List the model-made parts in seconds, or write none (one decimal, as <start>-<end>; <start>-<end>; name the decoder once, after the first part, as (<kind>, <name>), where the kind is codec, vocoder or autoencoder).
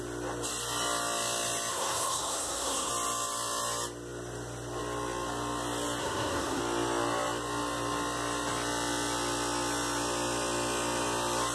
1.7-2.9 (codec, SNAC); 6.0-6.6